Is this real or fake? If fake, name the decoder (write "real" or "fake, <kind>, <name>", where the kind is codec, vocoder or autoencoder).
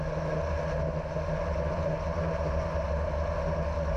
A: real